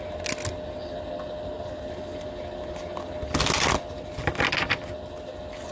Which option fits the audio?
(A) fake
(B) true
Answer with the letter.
B